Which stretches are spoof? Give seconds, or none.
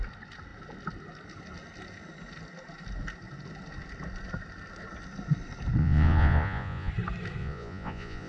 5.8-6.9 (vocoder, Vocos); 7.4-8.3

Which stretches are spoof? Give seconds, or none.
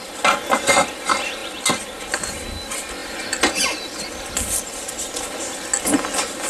none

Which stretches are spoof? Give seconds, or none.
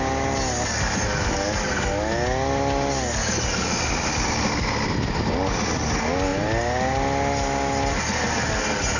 none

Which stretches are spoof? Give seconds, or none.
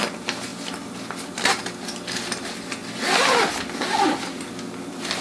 none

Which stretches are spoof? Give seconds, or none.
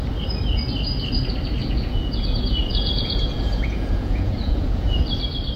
1.6-5.0 (vocoder, Vocos)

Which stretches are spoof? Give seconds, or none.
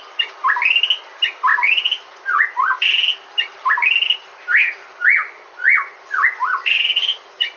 1.5-2.7 (vocoder, Vocos); 4.8-7.6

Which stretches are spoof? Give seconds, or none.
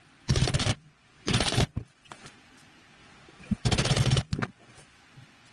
0.0-3.0 (vocoder, Vocos); 4.0-5.5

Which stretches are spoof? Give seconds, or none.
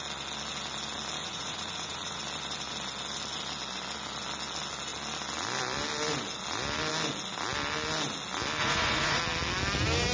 1.2-2.2 (vocoder, Vocos); 8.6-9.2